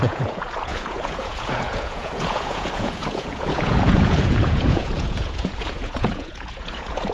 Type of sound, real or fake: fake